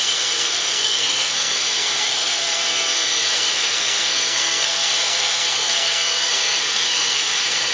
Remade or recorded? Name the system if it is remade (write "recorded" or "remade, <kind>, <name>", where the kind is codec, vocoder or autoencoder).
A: remade, codec, SNAC